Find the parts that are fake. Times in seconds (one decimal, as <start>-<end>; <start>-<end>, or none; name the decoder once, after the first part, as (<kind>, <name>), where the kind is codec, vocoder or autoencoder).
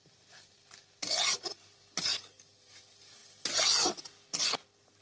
none